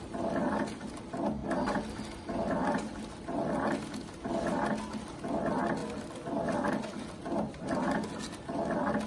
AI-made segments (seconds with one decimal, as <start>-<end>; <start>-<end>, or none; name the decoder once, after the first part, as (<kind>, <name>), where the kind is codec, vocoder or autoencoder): none